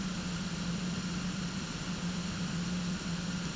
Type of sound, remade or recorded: recorded